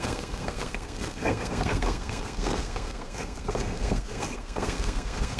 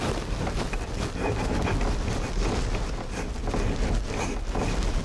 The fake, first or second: first